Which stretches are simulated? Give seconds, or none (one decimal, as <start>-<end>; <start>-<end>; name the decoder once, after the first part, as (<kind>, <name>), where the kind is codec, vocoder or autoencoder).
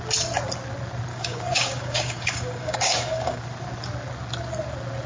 1.1-3.4 (codec, DAC)